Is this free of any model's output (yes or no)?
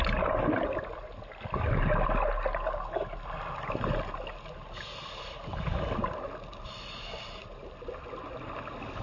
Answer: yes